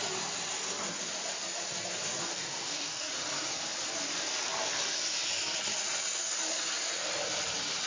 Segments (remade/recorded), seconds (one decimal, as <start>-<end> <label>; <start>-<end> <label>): 0.0-2.3 recorded; 2.3-3.1 remade; 3.1-7.9 recorded

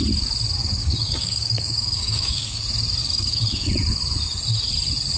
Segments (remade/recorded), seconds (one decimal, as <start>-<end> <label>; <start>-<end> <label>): 0.0-0.8 recorded; 0.8-2.6 remade; 2.6-3.0 recorded; 3.0-3.7 remade; 3.7-5.2 recorded

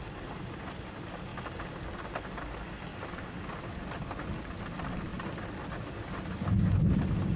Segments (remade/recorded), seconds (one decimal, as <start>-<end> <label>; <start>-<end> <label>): 0.0-7.4 recorded

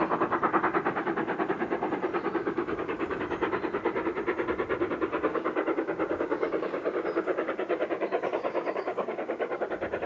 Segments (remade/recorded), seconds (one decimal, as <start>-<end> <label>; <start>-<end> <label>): 0.0-2.4 recorded; 2.4-3.2 remade; 3.2-5.3 recorded; 5.3-9.7 remade; 9.7-10.1 recorded

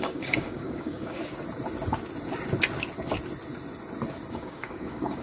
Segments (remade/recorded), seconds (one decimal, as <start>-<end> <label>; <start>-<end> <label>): 0.0-1.2 remade; 1.2-4.3 recorded; 4.3-5.2 remade

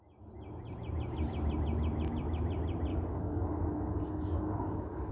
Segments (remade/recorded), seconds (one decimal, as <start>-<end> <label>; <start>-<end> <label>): 0.0-2.9 recorded; 2.9-5.1 remade

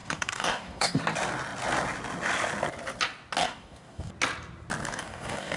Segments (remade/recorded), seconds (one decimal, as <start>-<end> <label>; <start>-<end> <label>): 0.0-1.0 remade; 1.0-3.4 recorded; 3.4-4.1 remade; 4.1-4.9 recorded; 4.9-5.6 remade

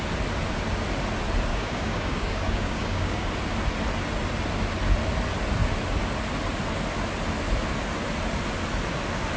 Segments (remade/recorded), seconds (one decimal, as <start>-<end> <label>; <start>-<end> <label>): 0.0-1.5 recorded; 1.5-3.3 remade; 3.3-9.4 recorded